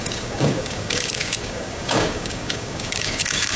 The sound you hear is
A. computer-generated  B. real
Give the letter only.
A